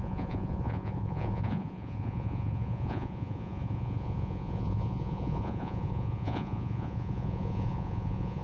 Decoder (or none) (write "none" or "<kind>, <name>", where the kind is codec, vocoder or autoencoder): vocoder, Vocos